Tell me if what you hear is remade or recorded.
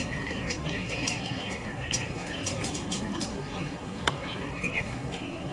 remade